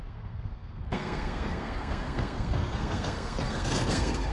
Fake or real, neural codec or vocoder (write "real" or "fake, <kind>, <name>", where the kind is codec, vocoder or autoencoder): fake, codec, SNAC